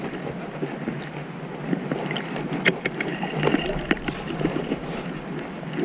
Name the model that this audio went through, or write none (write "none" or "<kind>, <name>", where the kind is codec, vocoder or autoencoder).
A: none